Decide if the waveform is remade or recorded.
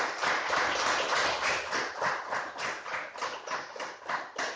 recorded